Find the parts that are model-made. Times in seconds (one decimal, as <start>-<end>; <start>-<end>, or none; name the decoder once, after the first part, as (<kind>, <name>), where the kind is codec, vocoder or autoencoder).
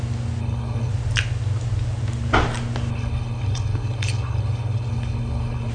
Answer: 0.4-0.9 (codec, HILCodec); 2.9-5.7